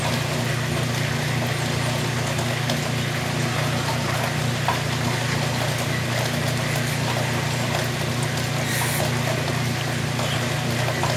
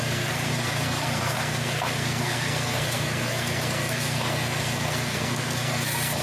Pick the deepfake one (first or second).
second